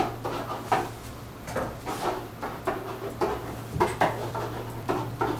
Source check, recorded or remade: recorded